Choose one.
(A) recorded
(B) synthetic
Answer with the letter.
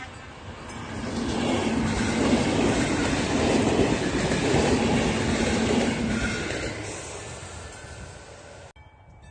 A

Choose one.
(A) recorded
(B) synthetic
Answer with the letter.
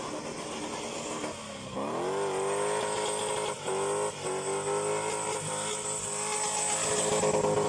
A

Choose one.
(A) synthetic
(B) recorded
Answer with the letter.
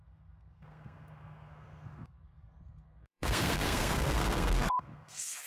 A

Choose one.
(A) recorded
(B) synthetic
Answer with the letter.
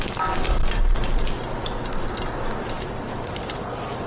A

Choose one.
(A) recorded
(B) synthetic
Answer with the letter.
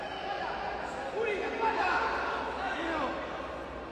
A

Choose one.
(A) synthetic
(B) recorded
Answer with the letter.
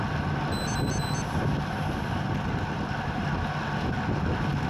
B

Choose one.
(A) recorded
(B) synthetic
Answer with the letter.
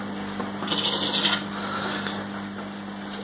A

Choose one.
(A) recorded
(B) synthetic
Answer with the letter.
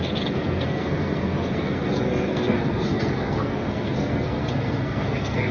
B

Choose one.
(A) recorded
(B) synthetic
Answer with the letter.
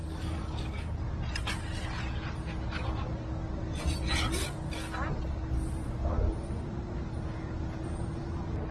A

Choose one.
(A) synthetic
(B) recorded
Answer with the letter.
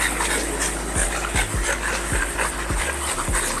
B